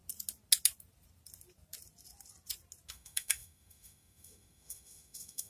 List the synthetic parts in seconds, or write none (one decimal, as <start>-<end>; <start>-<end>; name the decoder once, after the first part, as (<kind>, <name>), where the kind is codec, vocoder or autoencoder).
2.9-5.5 (autoencoder, DAC-VAE)